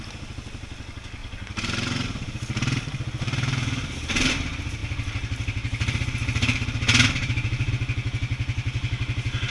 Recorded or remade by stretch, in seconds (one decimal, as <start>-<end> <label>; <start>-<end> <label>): 0.0-1.2 recorded; 1.2-4.3 remade; 4.3-4.8 recorded; 4.8-7.7 remade; 7.7-9.5 recorded